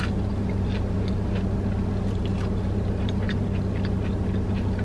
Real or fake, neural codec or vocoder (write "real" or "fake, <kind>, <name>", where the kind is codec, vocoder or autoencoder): real